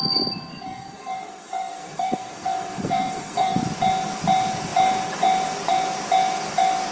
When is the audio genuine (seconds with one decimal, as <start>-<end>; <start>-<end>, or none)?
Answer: 0.0-0.5; 3.6-6.9